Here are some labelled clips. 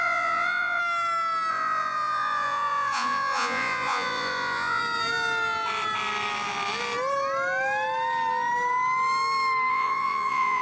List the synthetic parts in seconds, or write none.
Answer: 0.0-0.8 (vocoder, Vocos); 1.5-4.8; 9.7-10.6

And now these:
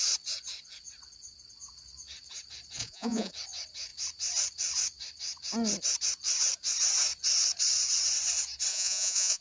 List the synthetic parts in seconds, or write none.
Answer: 2.8-3.3 (vocoder, Vocos); 8.7-9.4

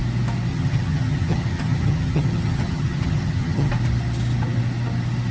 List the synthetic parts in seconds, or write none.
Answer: 0.5-3.7 (vocoder, HiFi-GAN)